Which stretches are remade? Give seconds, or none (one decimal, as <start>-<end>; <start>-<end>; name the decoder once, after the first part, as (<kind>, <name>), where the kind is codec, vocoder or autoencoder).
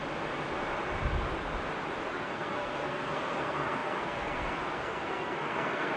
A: 2.1-6.0 (codec, SNAC)